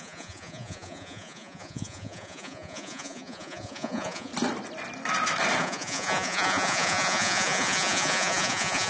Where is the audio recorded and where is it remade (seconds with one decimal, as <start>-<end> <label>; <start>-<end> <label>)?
0.0-4.3 remade; 4.3-5.6 recorded; 5.6-8.9 remade

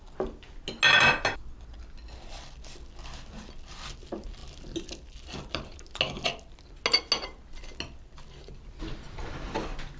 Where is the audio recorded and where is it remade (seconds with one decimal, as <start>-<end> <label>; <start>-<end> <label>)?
0.0-10.0 recorded

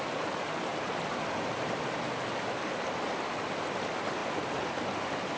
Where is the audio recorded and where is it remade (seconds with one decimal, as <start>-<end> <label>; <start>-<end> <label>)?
0.0-5.4 recorded

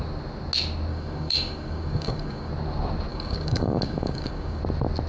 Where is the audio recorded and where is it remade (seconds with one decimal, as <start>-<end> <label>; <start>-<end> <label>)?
0.0-0.9 recorded; 0.9-2.5 remade; 2.5-3.1 recorded; 3.1-4.6 remade; 4.6-5.1 recorded

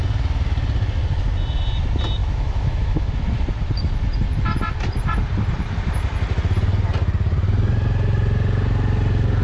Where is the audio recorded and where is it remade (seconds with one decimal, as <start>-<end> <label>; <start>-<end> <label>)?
0.0-2.2 recorded; 2.2-3.1 remade; 3.1-9.4 recorded

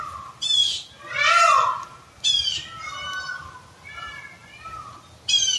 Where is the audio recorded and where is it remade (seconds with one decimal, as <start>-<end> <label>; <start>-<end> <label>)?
0.0-5.6 recorded